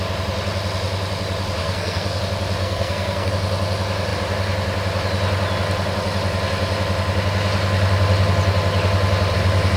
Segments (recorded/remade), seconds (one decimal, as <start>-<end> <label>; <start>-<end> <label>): 0.0-1.6 recorded; 1.6-2.2 remade; 2.2-2.6 recorded; 2.6-3.3 remade; 3.3-9.8 recorded